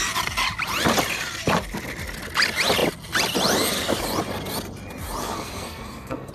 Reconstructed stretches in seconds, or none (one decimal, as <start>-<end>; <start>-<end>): 5.2-6.3